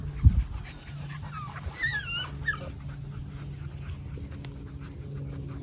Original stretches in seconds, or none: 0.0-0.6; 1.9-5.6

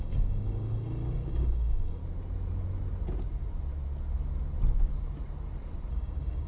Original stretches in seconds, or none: 2.0-5.9

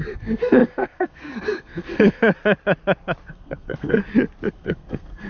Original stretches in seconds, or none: 2.2-3.3; 4.0-4.5